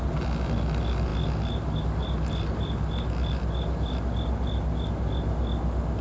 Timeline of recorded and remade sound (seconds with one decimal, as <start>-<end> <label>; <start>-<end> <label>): 0.0-6.0 recorded